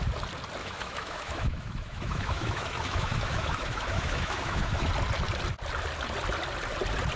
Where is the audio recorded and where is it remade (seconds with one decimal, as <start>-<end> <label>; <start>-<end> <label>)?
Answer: 0.0-0.6 recorded; 0.6-4.9 remade; 4.9-7.2 recorded